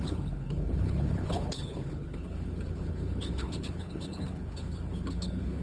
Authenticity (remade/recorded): remade